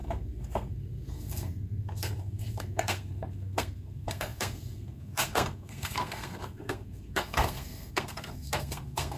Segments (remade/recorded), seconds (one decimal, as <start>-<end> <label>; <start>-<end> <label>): 0.0-9.2 remade